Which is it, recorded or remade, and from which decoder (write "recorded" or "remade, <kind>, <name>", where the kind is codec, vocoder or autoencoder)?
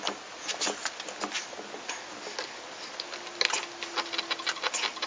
recorded